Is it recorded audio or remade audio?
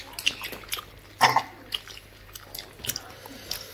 recorded